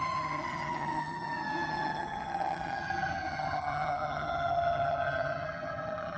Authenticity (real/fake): fake